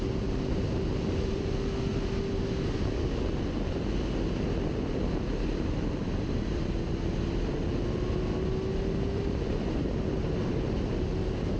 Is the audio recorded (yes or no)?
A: yes